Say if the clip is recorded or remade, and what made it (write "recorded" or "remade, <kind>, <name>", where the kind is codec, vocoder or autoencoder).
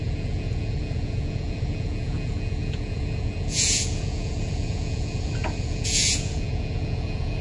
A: remade, vocoder, Vocos